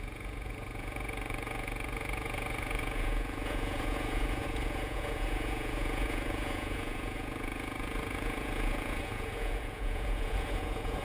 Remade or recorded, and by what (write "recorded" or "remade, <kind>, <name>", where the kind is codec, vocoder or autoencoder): remade, vocoder, Vocos